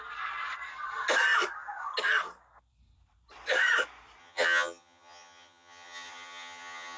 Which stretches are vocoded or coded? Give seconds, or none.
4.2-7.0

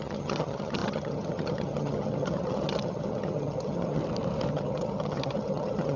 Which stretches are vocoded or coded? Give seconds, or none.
0.0-4.0; 4.5-6.0